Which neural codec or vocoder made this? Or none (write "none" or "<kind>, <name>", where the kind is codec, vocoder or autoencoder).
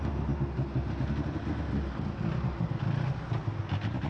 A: none